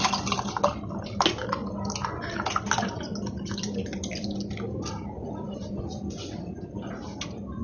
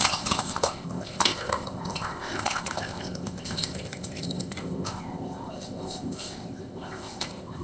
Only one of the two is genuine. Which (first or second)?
first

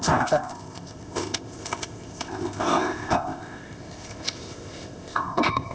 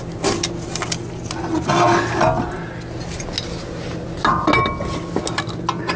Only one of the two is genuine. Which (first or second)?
second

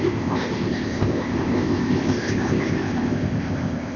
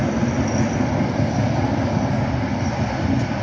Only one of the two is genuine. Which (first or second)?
second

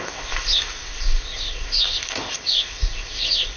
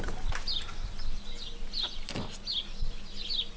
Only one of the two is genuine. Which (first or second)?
second